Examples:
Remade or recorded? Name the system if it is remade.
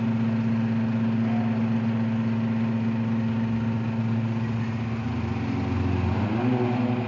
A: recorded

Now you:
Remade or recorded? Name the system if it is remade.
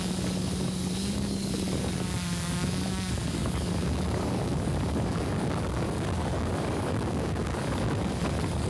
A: remade, codec, DAC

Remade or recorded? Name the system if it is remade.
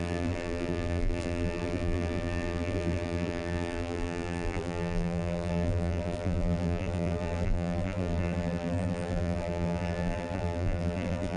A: remade, vocoder, BigVGAN v2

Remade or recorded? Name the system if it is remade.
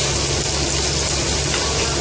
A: recorded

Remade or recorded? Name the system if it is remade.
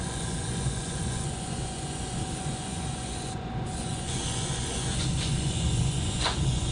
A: remade, vocoder, Vocos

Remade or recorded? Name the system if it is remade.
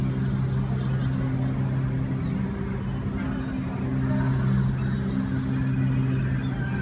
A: recorded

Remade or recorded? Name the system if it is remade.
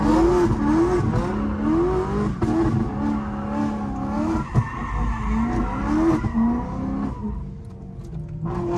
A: recorded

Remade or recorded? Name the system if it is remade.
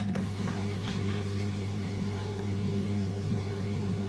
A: remade, codec, SNAC